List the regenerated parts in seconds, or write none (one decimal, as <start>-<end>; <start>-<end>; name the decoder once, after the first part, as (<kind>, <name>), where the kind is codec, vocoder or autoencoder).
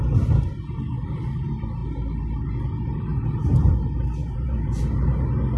3.1-3.7 (vocoder, Vocos); 4.2-4.8